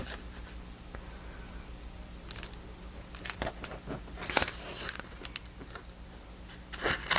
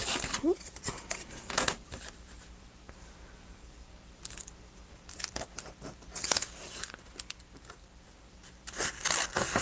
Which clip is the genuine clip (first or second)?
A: first